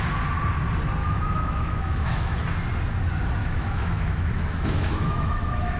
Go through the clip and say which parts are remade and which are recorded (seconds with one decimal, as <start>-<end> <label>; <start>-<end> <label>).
0.0-1.0 recorded; 1.0-2.4 remade; 2.4-3.4 recorded; 3.4-5.8 remade